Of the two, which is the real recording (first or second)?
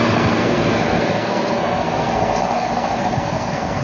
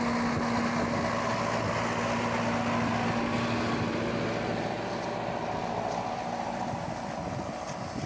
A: second